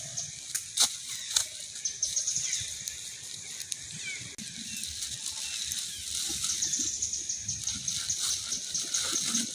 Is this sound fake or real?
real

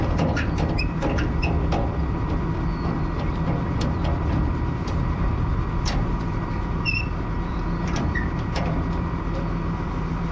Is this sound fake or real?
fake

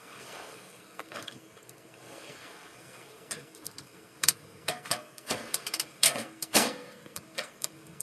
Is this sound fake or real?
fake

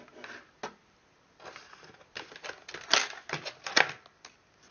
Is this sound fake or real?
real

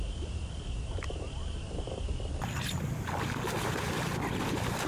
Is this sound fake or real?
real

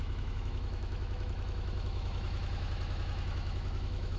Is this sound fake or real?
fake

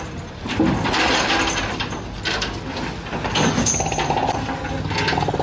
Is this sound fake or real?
real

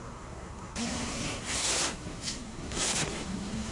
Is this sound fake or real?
fake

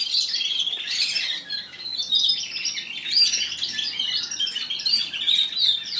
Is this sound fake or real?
real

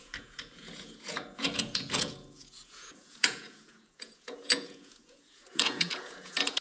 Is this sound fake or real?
fake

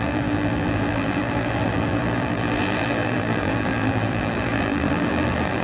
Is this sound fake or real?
fake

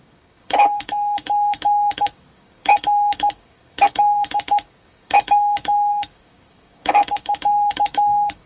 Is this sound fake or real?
fake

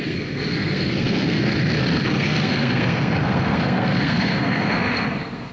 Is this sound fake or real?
fake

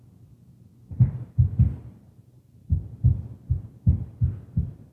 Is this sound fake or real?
real